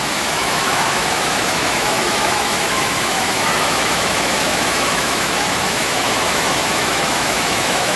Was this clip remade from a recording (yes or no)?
yes